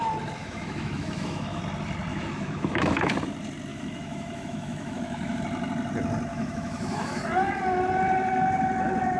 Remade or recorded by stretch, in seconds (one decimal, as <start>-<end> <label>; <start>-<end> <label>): 0.0-0.4 recorded; 0.4-1.6 remade; 1.6-2.1 recorded; 2.1-3.1 remade; 3.1-3.7 recorded; 3.7-5.4 remade; 5.4-6.3 recorded; 6.3-7.2 remade; 7.2-9.2 recorded